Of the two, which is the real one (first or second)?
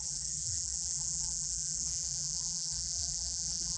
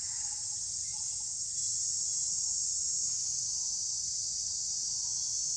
second